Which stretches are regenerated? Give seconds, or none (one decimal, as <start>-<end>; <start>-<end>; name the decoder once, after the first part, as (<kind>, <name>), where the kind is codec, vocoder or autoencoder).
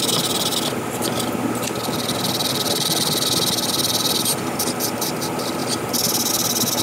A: none